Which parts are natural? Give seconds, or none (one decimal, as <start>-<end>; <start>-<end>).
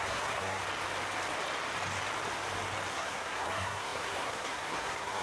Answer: 0.6-2.9